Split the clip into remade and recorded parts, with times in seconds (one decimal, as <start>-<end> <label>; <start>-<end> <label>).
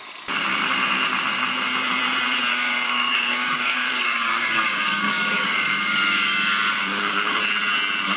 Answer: 0.0-2.5 recorded; 2.5-7.4 remade; 7.4-8.2 recorded